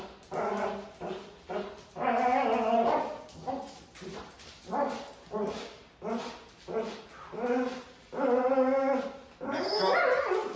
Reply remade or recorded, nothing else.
recorded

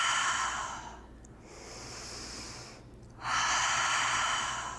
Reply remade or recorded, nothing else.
recorded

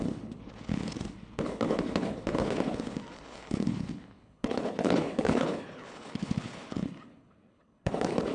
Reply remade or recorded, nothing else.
remade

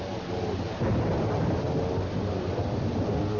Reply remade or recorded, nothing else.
recorded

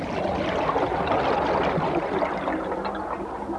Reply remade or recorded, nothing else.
recorded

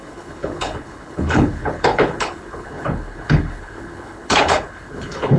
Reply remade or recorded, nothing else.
remade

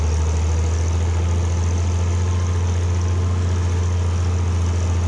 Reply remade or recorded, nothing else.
recorded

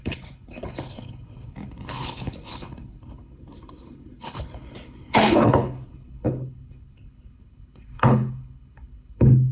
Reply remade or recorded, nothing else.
remade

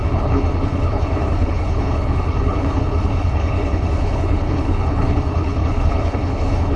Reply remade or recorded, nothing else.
remade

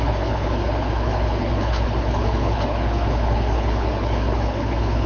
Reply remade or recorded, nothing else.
remade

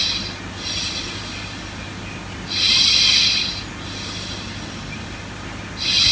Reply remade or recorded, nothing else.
recorded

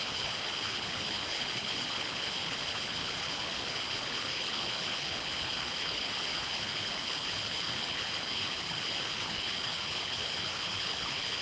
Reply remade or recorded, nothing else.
remade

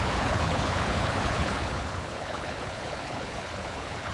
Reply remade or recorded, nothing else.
remade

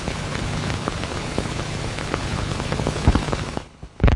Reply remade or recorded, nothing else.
remade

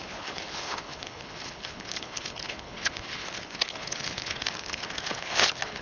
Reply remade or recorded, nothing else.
remade